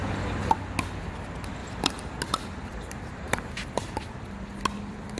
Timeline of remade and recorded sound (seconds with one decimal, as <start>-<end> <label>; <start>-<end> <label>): 0.0-1.6 recorded; 1.6-2.1 remade; 2.1-2.7 recorded; 2.7-4.1 remade; 4.1-5.2 recorded

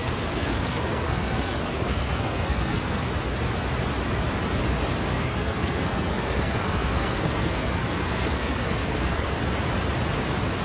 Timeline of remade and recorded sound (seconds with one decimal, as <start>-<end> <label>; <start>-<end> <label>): 0.0-3.1 remade; 3.1-5.1 recorded; 5.1-9.4 remade; 9.4-10.6 recorded